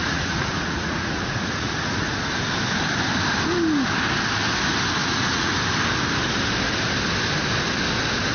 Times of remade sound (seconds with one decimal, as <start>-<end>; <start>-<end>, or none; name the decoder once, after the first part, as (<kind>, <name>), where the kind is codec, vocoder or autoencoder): 0.0-2.3 (vocoder, Vocos); 5.0-5.5

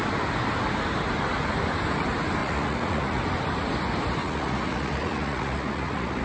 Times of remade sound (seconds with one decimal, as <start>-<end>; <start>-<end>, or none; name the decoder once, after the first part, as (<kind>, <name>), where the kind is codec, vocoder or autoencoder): 2.4-3.2 (vocoder, Vocos); 4.2-6.2

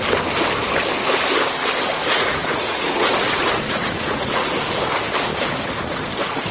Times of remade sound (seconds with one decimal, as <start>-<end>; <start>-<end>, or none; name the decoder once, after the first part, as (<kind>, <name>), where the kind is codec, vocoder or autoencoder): 2.0-4.7 (vocoder, Vocos)

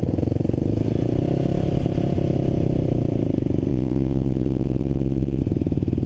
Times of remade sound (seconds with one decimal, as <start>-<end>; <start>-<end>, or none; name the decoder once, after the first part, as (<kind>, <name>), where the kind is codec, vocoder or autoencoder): 3.7-5.4 (vocoder, Vocos)

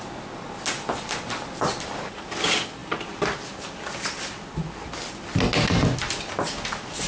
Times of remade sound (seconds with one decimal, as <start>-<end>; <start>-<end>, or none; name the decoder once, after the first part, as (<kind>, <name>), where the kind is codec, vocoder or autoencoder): none